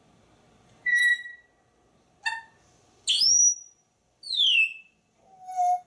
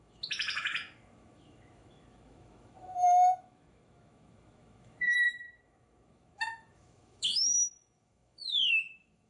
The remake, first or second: second